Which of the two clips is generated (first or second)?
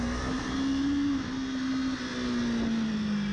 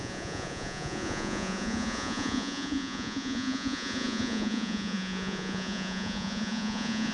second